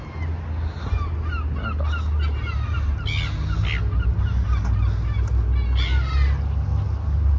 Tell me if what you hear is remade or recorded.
recorded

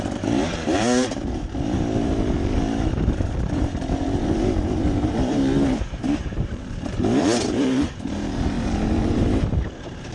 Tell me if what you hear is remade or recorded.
remade